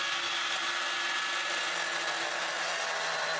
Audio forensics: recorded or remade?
recorded